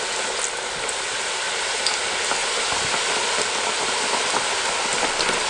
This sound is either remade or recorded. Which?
recorded